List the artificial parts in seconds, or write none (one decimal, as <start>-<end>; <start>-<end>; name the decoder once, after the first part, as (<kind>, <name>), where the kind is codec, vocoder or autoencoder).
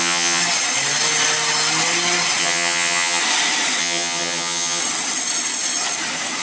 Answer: 0.0-0.4 (vocoder, HiFi-GAN); 2.4-3.2; 3.8-4.8